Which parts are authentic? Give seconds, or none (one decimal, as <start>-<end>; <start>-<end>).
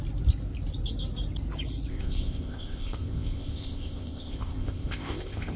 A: 0.0-1.9